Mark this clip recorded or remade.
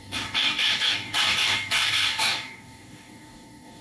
remade